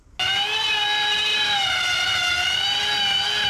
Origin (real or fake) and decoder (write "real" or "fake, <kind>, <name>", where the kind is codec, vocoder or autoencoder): real